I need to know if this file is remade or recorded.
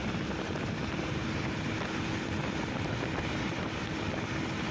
remade